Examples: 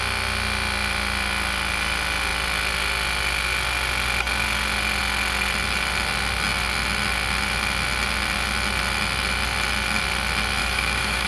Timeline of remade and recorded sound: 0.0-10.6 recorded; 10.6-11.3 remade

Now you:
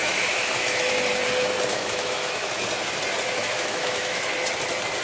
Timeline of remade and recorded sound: 0.0-0.9 remade; 0.9-1.7 recorded; 1.7-2.5 remade; 2.5-3.4 recorded; 3.4-4.2 remade; 4.2-5.0 recorded